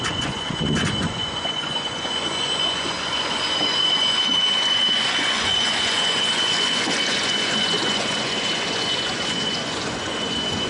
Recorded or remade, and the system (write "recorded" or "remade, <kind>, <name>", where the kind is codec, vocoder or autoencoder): remade, vocoder, Vocos